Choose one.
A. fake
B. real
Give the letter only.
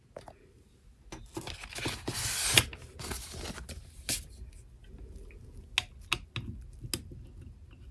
B